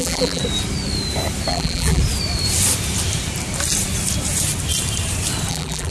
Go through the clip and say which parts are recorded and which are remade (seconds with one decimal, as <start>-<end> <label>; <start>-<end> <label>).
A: 0.0-0.4 remade; 0.4-1.5 recorded; 1.5-2.0 remade; 2.0-5.5 recorded; 5.5-5.9 remade